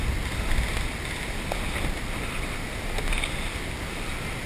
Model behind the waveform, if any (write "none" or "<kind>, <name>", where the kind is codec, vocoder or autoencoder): none